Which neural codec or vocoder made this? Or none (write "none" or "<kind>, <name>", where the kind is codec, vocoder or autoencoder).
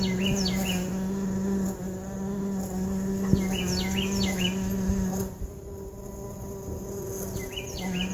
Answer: none